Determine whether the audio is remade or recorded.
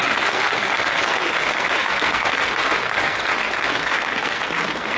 remade